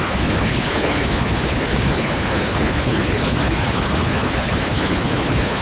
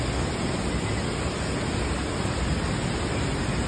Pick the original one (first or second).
second